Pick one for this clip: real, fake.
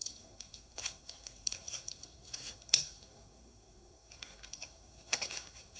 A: fake